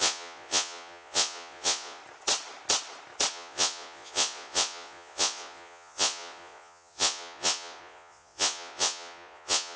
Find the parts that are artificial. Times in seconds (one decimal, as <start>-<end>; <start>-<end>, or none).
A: 0.0-2.0; 3.3-9.8